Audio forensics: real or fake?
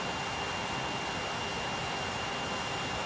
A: real